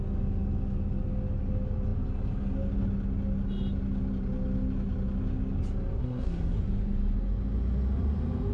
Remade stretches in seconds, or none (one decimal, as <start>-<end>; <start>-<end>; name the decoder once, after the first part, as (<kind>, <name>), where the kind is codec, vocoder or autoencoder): 6.0-6.6 (codec, SNAC)